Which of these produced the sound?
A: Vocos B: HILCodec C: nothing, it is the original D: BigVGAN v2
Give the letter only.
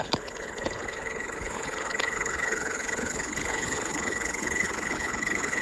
B